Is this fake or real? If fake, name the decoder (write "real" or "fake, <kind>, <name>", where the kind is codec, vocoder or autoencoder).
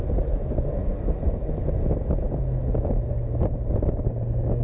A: real